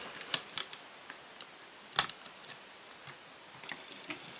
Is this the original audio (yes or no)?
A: yes